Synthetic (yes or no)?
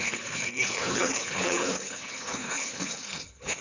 yes